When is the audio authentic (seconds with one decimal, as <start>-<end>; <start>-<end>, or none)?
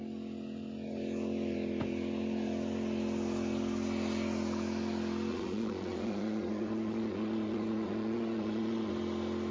0.0-5.3; 8.9-9.5